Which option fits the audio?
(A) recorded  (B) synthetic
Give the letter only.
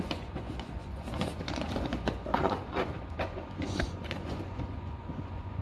B